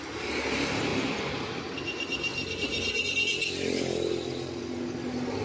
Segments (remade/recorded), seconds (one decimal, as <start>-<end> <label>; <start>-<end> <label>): 0.0-5.4 recorded